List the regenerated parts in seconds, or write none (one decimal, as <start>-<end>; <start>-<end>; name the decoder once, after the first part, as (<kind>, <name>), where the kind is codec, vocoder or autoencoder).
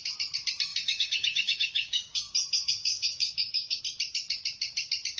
0.7-3.8 (codec, DAC)